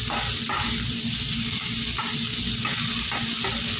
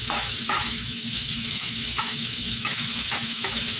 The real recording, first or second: first